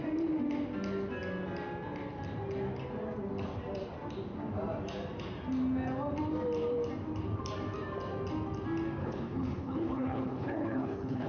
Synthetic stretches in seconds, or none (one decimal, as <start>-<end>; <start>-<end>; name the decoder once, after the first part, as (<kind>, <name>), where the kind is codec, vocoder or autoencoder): 9.0-11.3 (codec, HILCodec)